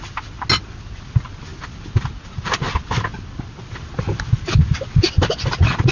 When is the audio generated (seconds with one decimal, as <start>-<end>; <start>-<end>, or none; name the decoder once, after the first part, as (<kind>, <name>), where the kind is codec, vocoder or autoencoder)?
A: none